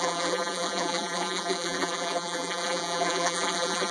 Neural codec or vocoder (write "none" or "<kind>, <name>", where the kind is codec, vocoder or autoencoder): vocoder, BigVGAN v2